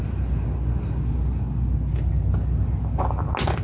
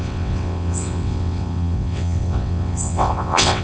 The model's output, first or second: second